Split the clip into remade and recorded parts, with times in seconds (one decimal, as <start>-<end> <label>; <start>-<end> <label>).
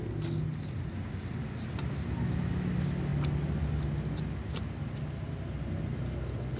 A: 0.0-6.6 recorded